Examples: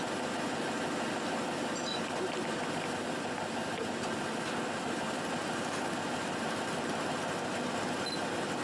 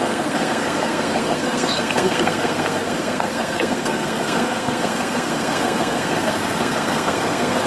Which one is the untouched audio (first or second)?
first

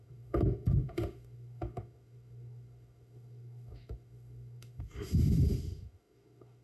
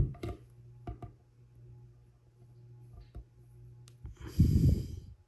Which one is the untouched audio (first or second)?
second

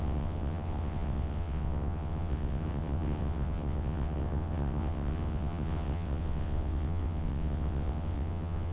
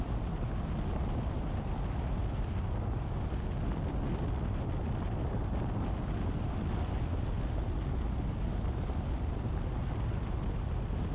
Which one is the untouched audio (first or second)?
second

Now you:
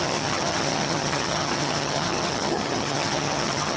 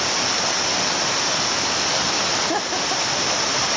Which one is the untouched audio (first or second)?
second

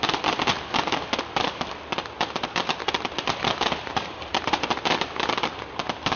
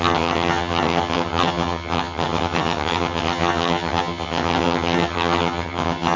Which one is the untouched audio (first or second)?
first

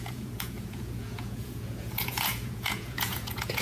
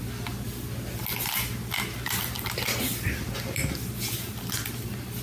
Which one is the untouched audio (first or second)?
second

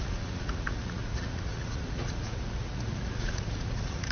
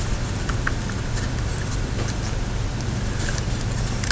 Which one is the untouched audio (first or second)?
second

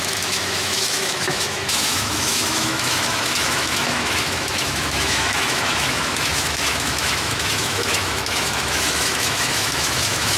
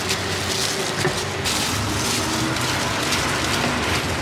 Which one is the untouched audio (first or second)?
second